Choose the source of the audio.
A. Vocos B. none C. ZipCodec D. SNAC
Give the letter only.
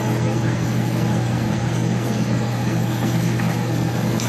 D